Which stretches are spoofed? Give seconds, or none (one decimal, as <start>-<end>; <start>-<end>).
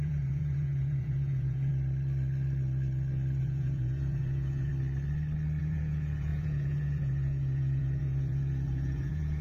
0.0-1.7; 3.4-4.7; 5.6-9.4